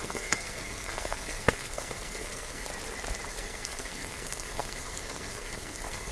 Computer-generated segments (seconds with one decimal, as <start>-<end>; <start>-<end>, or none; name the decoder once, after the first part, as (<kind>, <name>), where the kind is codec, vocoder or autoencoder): 0.0-2.7 (codec, SNAC); 3.3-6.1